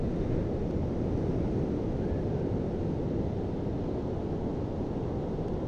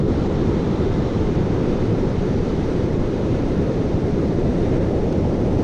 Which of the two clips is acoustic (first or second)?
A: first